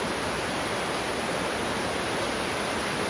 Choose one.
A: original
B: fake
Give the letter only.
A